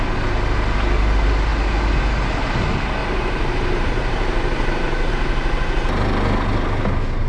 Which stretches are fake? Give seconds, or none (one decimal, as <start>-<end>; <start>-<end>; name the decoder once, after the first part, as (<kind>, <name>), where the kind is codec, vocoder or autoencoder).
3.0-5.1 (vocoder, BigVGAN v2)